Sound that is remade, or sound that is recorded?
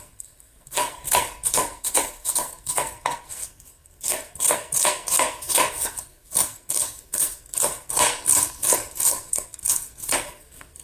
remade